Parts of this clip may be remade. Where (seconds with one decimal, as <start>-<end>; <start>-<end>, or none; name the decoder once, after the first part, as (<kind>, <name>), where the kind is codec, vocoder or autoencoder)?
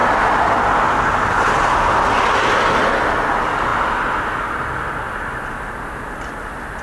none